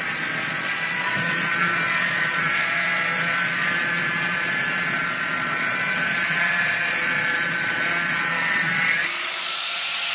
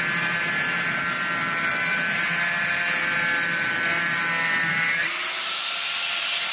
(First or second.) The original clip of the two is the second